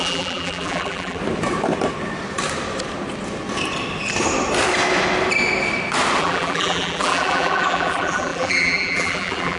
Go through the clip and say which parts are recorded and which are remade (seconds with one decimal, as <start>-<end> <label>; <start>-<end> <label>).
0.0-1.2 remade; 1.2-6.2 recorded; 6.2-9.6 remade